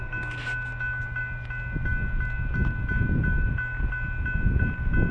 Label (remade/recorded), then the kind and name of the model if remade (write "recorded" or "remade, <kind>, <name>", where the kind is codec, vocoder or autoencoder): recorded